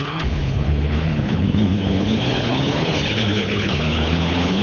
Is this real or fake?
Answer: fake